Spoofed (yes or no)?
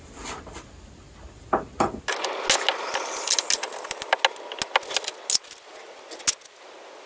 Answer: no